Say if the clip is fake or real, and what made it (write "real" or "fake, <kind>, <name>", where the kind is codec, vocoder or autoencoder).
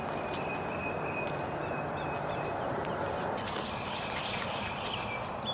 real